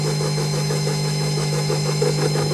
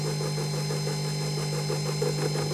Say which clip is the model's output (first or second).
first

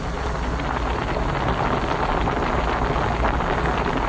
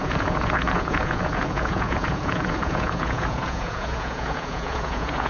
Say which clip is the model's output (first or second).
second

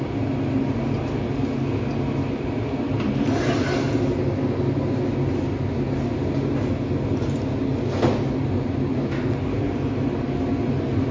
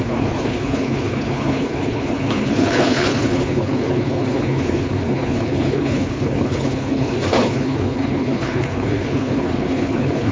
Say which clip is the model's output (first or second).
second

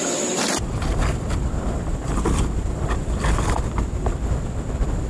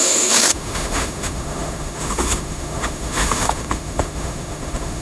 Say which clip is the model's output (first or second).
second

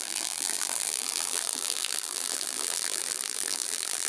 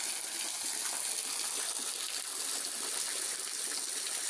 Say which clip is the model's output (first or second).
first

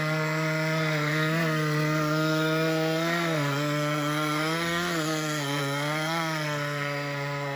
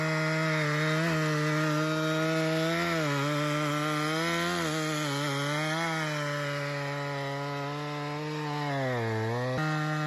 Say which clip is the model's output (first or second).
first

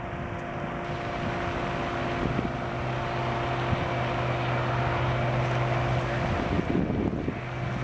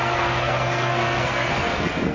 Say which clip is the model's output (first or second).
second